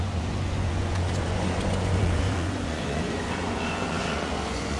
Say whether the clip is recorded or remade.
remade